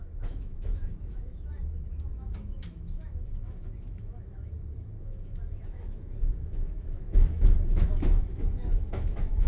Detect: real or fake fake